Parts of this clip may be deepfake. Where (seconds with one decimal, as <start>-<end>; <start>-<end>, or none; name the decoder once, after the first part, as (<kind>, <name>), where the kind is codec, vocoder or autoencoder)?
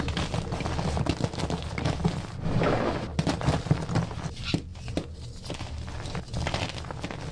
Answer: none